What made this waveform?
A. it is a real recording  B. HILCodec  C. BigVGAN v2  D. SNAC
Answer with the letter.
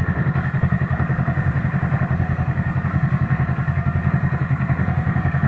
D